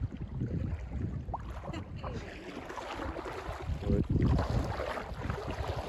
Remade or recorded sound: recorded